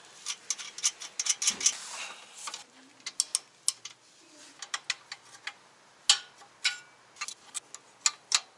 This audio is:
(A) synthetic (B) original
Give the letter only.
B